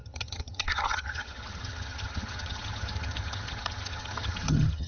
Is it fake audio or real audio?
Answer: fake